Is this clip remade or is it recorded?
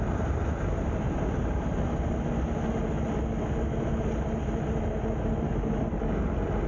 recorded